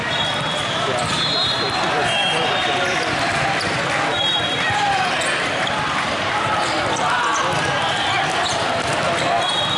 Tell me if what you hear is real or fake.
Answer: fake